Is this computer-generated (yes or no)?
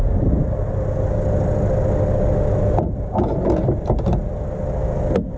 no